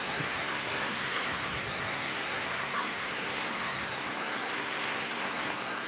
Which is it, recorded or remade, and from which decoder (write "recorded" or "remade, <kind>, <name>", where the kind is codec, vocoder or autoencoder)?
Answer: remade, codec, SNAC